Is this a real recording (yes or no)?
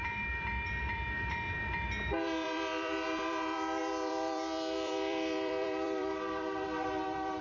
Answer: no